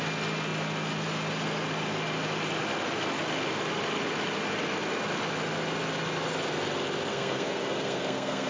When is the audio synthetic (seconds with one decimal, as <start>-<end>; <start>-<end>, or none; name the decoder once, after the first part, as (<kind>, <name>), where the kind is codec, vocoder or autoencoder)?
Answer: 7.1-8.5 (codec, SNAC)